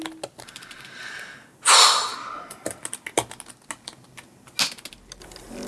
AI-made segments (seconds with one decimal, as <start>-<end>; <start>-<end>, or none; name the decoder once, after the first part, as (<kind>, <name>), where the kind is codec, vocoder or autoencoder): none